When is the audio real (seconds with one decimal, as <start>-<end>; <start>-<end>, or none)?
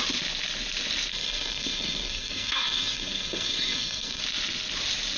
0.0-1.1; 4.2-5.2